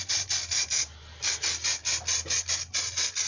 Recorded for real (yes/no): yes